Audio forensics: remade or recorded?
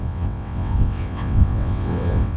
remade